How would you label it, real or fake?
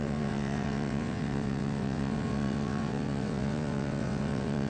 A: fake